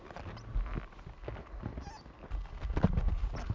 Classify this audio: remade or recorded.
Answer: recorded